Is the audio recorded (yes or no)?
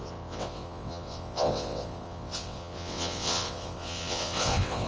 no